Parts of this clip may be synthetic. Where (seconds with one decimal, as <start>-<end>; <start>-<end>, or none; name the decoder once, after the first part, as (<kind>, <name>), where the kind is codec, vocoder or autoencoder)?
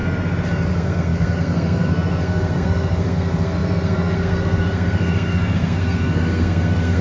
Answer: 0.7-7.0 (codec, SNAC)